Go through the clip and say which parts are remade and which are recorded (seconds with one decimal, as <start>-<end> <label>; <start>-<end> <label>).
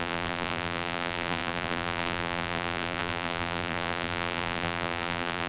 0.0-5.5 remade